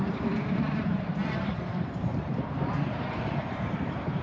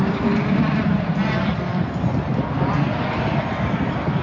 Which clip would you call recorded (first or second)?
second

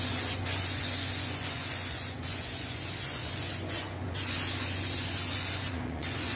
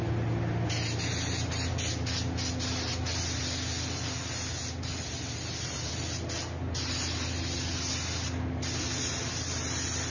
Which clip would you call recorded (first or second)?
second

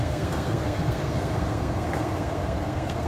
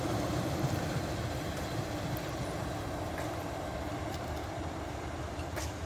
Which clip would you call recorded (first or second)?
second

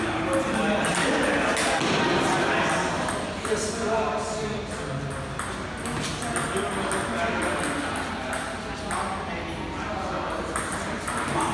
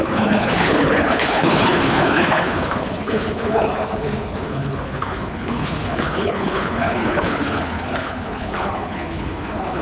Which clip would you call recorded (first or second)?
first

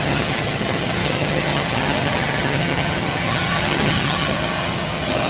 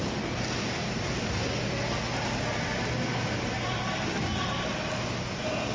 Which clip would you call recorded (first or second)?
second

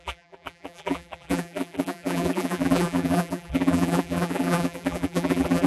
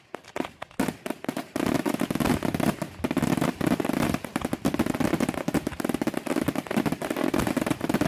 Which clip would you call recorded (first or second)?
second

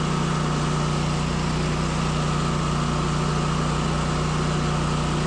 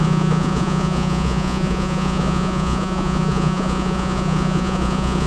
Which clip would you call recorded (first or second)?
first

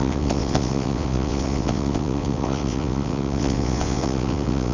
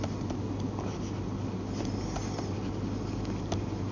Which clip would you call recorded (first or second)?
second